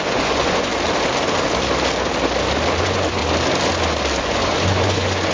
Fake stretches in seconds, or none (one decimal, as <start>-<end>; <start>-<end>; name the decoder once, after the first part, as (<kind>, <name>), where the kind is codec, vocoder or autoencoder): 0.0-0.7 (vocoder, Vocos); 2.8-3.2; 4.2-5.3